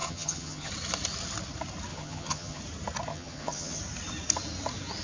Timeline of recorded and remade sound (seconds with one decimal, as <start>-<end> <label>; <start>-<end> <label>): 0.0-0.7 remade; 0.7-1.9 recorded; 1.9-2.6 remade; 2.6-3.1 recorded; 3.1-3.8 remade; 3.8-5.0 recorded